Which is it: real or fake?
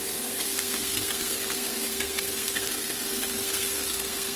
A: fake